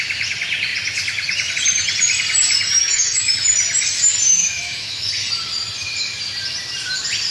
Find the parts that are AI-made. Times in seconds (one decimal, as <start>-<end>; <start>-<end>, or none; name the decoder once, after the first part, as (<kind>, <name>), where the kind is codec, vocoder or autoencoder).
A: 2.8-3.3 (autoencoder, DAC-VAE); 4.3-5.1